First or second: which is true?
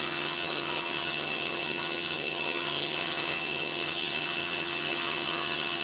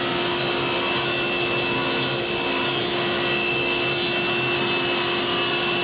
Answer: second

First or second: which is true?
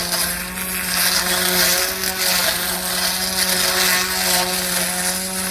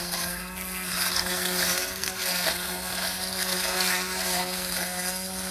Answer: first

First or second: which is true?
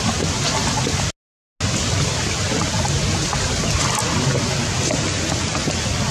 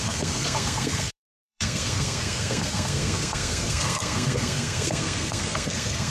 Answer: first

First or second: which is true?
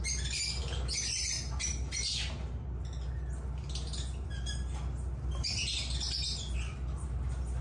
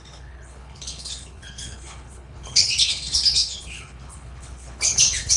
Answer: first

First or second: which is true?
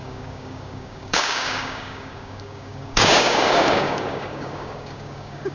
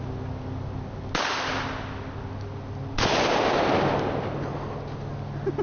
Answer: second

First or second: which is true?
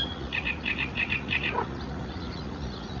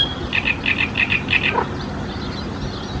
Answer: second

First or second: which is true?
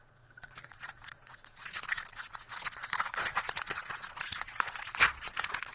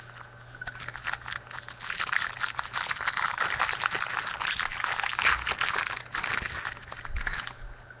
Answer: second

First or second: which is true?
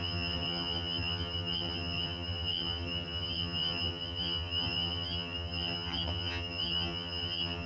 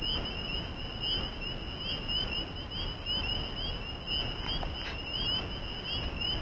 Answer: second